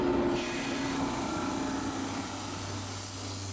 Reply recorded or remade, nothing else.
recorded